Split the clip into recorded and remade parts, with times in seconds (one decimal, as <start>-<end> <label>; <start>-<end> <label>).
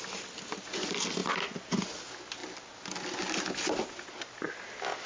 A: 0.0-5.1 recorded